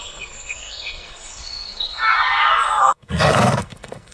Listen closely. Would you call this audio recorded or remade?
remade